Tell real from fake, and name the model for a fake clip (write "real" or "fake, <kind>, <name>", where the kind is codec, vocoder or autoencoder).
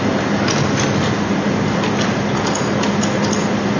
real